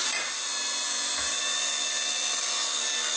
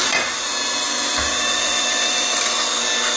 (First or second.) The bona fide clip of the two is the first